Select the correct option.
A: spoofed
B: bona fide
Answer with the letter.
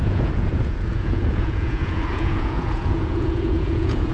A